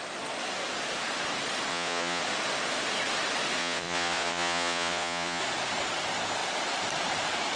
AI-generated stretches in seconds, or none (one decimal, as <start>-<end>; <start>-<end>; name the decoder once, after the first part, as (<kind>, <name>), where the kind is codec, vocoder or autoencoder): 1.7-2.2 (vocoder, Vocos); 3.6-5.4